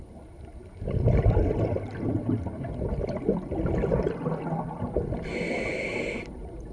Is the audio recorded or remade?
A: recorded